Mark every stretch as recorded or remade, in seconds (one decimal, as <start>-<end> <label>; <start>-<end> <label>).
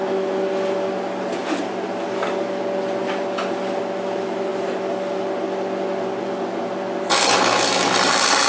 0.0-8.5 recorded